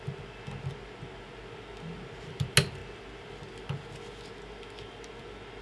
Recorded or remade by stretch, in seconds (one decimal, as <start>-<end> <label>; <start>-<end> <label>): 0.0-5.6 recorded